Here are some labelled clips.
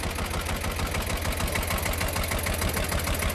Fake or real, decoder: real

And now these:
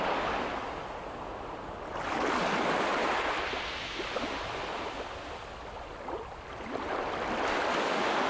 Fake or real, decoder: real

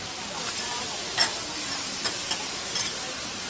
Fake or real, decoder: real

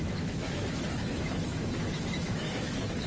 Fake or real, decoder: fake, autoencoder, DAC-VAE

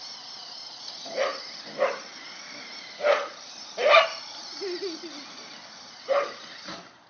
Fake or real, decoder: real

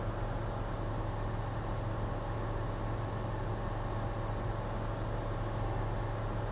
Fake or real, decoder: real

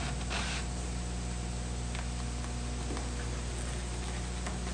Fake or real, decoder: real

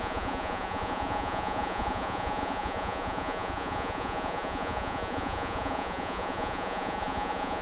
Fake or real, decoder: fake, vocoder, Vocos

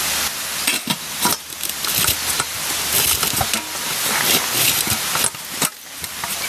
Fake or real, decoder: real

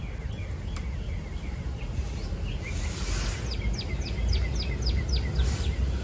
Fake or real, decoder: real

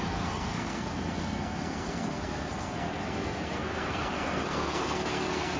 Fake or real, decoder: fake, codec, SNAC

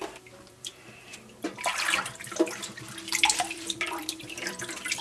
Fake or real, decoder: fake, vocoder, BigVGAN v2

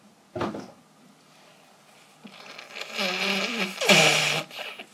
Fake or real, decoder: real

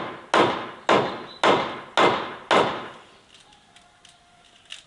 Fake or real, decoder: real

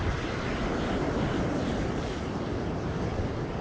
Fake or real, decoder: real